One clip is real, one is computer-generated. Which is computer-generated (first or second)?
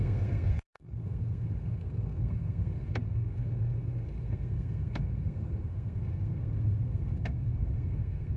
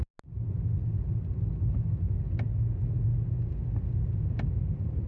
first